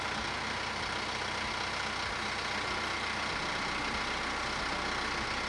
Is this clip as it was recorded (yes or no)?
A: yes